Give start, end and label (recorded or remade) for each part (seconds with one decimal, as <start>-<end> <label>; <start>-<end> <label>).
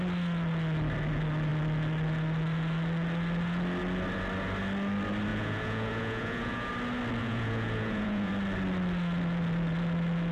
0.0-5.3 recorded; 5.3-6.7 remade; 6.7-7.2 recorded; 7.2-8.3 remade; 8.3-10.3 recorded